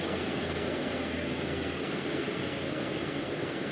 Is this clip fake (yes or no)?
yes